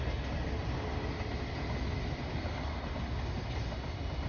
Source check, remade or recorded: recorded